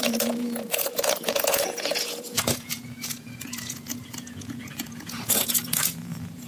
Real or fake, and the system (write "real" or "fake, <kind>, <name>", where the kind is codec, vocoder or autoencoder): fake, vocoder, Vocos